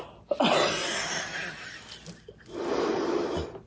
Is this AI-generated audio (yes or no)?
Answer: no